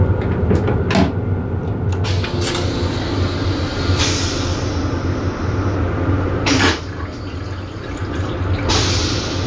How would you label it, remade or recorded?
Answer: recorded